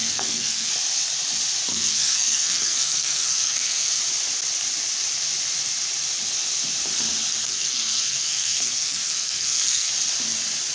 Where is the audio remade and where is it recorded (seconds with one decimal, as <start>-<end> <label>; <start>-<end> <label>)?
0.0-0.7 remade; 0.7-1.7 recorded; 1.7-4.0 remade; 4.0-7.4 recorded; 7.4-9.9 remade; 9.9-10.7 recorded